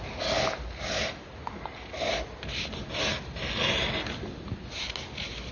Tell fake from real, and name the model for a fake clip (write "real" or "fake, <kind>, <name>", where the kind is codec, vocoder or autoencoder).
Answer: real